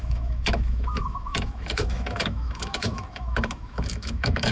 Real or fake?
fake